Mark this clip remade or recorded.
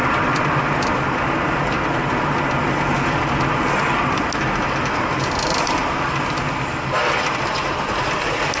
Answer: recorded